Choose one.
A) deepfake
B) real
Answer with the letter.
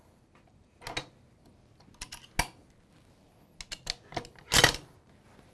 B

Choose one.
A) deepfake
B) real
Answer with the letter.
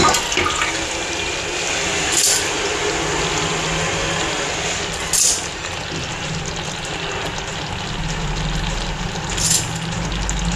B